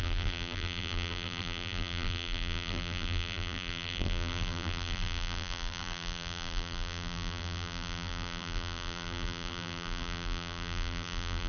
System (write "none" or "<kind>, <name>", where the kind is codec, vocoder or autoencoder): vocoder, BigVGAN v2